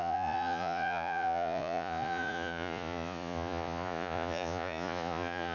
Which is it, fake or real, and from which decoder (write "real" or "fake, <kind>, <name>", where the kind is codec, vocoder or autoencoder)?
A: fake, vocoder, Vocos